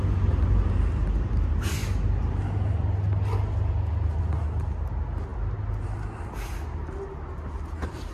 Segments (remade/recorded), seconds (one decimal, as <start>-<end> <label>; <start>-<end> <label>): 0.0-8.1 recorded